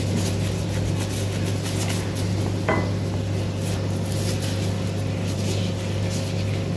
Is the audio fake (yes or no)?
no